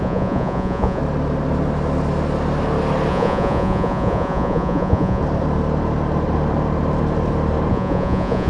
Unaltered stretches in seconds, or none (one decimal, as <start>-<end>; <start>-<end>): 1.0-3.1; 5.2-7.7